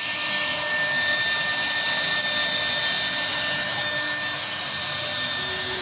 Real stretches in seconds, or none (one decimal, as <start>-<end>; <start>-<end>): 0.0-5.8